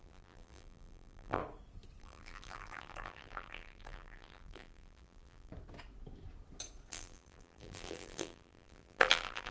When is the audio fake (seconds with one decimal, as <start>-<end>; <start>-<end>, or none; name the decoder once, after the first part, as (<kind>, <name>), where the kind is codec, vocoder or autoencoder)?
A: 0.0-1.4 (vocoder, BigVGAN v2); 2.0-5.5; 6.9-9.5